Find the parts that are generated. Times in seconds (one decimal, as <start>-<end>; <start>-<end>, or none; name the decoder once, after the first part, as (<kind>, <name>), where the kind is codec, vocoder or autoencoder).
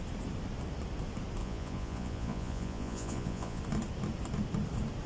1.4-3.6 (vocoder, Vocos)